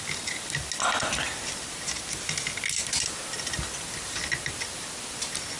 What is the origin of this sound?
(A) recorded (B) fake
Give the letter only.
A